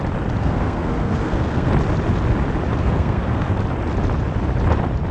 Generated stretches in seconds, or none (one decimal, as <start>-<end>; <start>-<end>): 0.4-1.7; 2.8-3.5